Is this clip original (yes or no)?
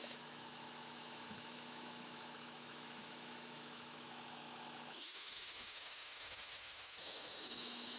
no